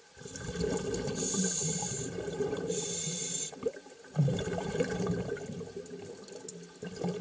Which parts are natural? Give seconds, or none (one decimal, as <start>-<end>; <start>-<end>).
0.0-1.6; 5.3-7.2